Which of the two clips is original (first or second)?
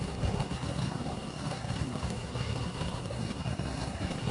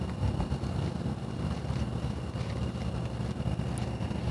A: second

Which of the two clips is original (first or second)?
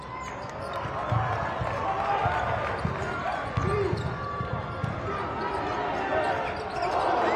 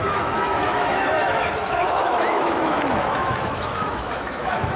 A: first